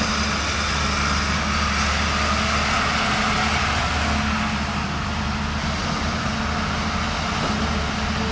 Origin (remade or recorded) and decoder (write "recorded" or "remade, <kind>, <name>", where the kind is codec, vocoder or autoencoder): recorded